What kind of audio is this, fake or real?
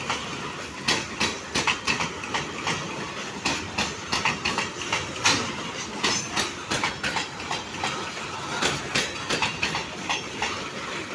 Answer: real